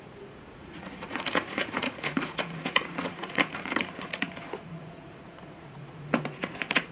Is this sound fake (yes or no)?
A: yes